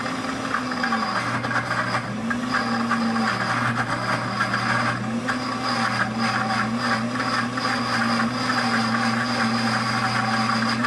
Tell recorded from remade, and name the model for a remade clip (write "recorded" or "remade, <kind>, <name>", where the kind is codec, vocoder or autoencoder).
recorded